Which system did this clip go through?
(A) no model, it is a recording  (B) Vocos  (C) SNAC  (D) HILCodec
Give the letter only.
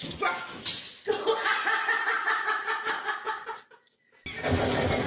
A